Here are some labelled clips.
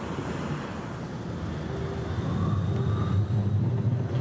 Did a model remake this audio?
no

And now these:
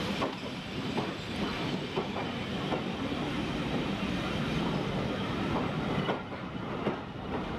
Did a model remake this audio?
no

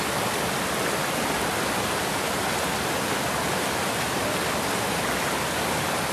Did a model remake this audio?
no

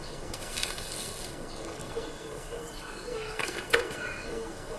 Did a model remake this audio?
yes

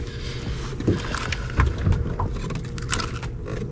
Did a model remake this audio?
no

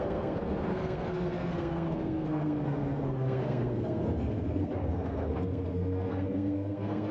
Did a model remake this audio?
yes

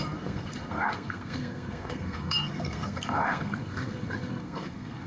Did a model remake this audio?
yes